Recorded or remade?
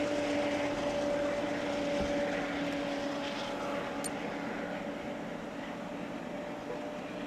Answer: recorded